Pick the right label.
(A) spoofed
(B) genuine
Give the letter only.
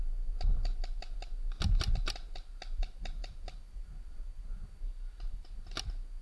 B